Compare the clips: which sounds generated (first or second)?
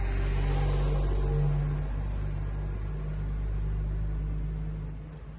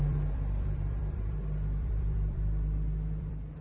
second